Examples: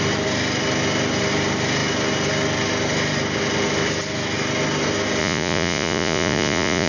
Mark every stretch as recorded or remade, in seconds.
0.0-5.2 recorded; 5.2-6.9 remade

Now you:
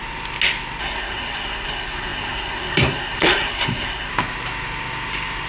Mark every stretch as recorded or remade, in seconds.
0.0-0.8 recorded; 0.8-4.1 remade; 4.1-5.5 recorded